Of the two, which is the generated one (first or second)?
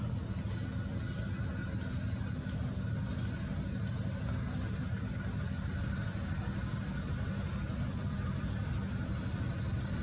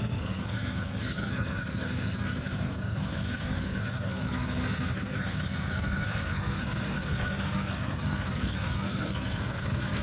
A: second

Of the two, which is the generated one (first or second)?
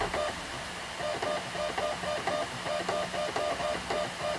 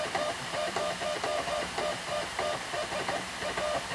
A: second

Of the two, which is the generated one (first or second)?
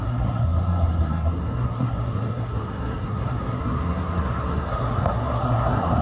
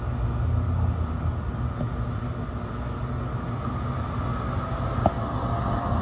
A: first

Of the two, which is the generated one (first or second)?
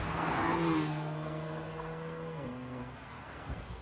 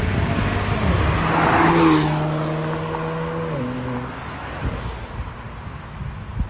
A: first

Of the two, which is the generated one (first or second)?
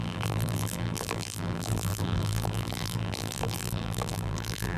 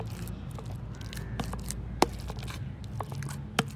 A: first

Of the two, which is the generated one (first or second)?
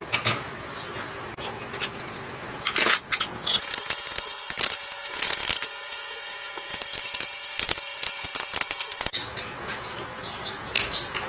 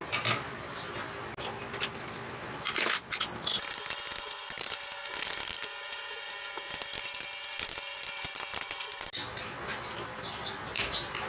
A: first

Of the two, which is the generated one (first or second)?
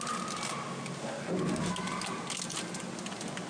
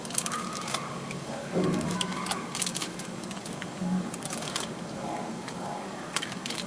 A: second